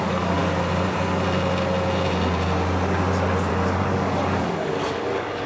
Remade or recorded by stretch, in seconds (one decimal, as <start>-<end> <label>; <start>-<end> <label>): 0.0-0.4 remade; 0.4-3.5 recorded; 3.5-5.5 remade